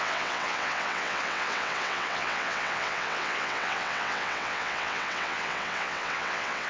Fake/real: fake